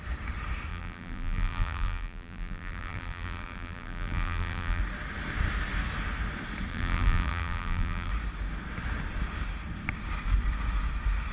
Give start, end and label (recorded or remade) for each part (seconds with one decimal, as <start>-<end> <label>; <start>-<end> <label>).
0.0-0.7 recorded; 0.7-4.8 remade; 4.8-6.7 recorded; 6.7-8.1 remade; 8.1-11.3 recorded